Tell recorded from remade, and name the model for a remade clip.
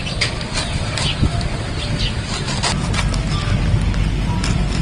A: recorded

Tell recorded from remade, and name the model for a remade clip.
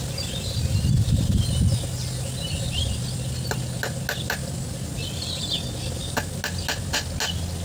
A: recorded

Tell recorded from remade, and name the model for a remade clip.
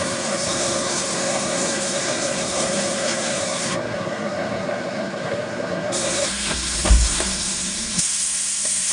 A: remade, codec, SNAC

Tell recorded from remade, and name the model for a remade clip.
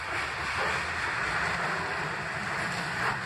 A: recorded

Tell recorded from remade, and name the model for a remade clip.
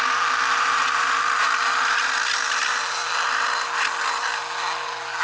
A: recorded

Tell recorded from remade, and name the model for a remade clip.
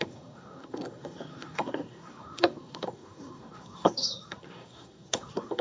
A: remade, codec, SNAC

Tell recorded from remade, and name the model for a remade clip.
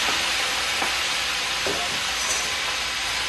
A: recorded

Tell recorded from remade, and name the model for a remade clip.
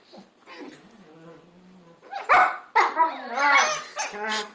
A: recorded